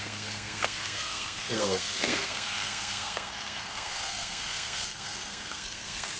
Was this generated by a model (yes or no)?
yes